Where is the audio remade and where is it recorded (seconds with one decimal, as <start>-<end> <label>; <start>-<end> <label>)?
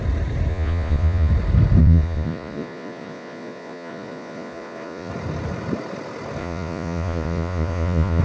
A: 0.0-0.5 recorded; 0.5-1.3 remade; 1.3-1.8 recorded; 1.8-5.1 remade; 5.1-6.4 recorded; 6.4-8.2 remade